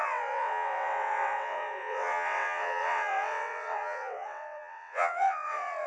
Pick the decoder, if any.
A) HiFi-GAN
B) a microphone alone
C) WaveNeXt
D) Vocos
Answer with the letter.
C